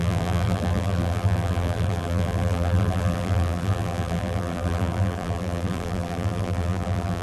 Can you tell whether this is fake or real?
fake